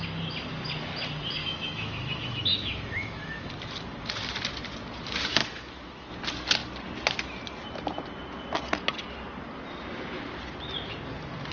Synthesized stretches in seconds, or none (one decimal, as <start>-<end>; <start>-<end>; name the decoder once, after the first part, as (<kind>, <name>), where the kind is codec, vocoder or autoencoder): 1.4-3.5 (autoencoder, DAC-VAE); 5.4-6.1